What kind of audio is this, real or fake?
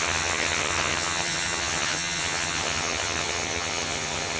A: fake